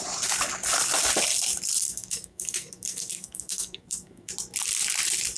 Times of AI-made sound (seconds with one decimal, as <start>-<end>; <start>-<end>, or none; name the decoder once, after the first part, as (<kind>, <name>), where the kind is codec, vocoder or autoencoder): 1.8-4.3 (codec, SNAC)